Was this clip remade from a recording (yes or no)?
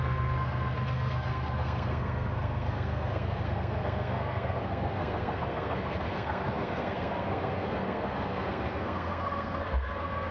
yes